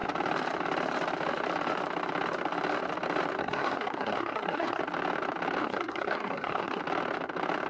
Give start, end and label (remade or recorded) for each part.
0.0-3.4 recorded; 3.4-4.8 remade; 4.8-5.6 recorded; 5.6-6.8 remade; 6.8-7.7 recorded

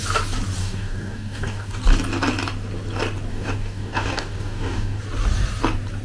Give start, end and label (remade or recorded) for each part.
0.0-0.6 recorded; 0.6-1.8 remade; 1.8-3.3 recorded; 3.3-5.0 remade; 5.0-6.0 recorded

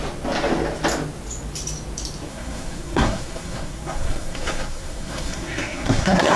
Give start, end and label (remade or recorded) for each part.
0.0-2.3 recorded; 2.3-6.4 remade

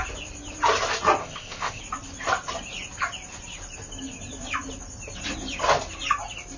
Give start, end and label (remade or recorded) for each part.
0.0-1.2 recorded; 1.2-1.8 remade; 1.8-6.6 recorded

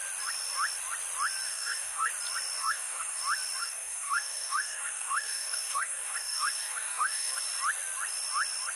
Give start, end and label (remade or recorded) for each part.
0.0-1.5 recorded; 1.5-2.1 remade; 2.1-2.6 recorded; 2.6-3.2 remade; 3.2-3.6 recorded; 3.6-7.4 remade; 7.4-8.8 recorded

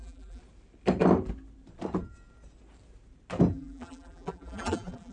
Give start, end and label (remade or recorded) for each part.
0.0-0.4 remade; 0.4-3.5 recorded; 3.5-5.1 remade

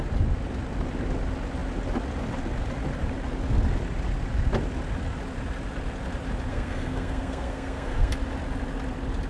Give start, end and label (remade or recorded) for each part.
0.0-6.5 recorded; 6.5-8.1 remade; 8.1-9.3 recorded